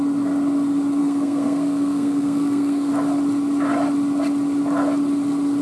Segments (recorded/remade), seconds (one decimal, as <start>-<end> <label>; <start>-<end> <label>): 0.0-1.0 recorded; 1.0-2.9 remade; 2.9-5.6 recorded